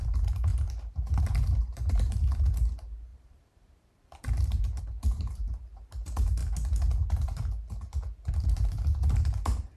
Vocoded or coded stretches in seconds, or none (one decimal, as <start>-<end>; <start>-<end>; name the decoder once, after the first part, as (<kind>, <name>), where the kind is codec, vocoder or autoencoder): 0.0-0.5 (vocoder, BigVGAN v2); 1.6-6.4; 8.3-9.8